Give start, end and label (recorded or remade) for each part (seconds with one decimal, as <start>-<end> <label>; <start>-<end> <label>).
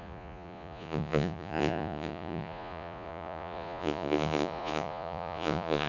0.0-5.9 remade